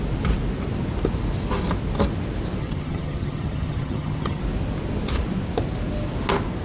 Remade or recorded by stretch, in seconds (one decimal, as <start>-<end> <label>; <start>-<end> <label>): 0.0-2.6 recorded; 2.6-4.4 remade; 4.4-6.6 recorded